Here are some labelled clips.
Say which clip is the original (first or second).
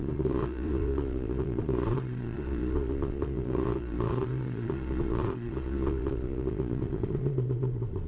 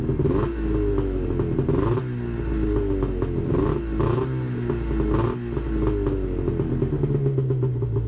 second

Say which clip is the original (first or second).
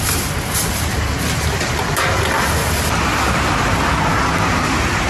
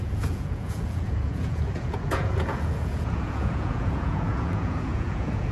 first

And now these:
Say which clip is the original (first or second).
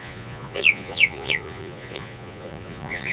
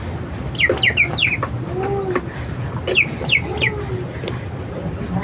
second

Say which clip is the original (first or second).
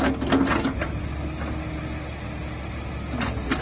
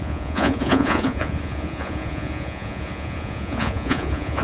first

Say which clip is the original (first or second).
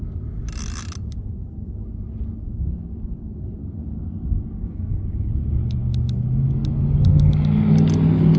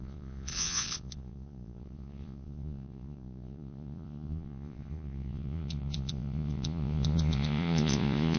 first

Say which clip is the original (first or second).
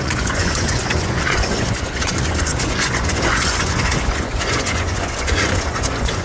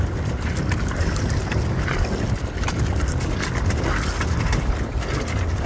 second